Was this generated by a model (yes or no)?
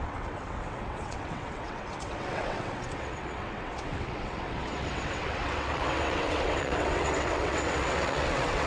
yes